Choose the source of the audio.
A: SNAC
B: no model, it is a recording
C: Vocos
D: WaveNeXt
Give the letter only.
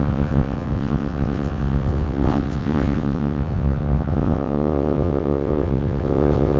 D